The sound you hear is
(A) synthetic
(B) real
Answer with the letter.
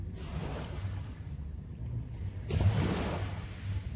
B